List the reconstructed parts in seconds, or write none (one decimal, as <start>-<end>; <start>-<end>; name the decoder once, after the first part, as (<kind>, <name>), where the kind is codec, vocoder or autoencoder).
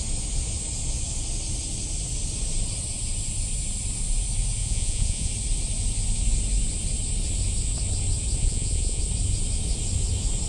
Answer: 4.6-5.3 (vocoder, Vocos); 8.4-9.0